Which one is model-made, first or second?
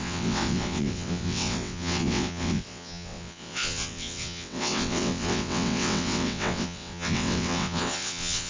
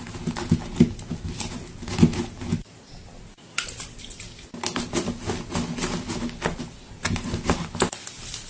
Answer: first